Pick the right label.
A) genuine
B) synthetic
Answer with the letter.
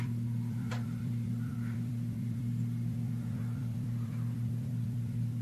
B